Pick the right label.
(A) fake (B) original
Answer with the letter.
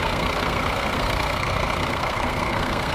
A